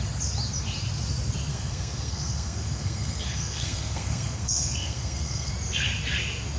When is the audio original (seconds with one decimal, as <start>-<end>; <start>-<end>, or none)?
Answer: 0.0-1.5; 5.5-6.6